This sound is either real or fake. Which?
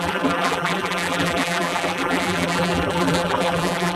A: fake